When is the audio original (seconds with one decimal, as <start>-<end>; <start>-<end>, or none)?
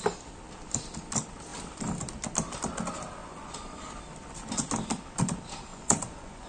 0.0-3.2; 3.8-5.7